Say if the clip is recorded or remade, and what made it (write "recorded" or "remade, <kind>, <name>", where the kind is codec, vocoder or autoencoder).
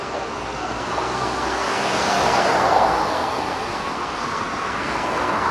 remade, codec, SNAC